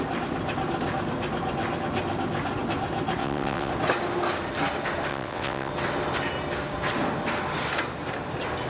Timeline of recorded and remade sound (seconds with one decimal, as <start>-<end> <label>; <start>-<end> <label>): 0.0-3.2 recorded; 3.2-3.7 remade; 3.7-5.1 recorded; 5.1-5.7 remade; 5.7-8.7 recorded